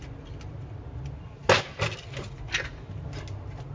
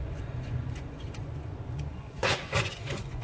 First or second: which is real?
first